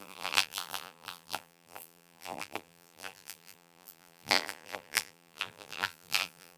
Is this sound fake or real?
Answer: fake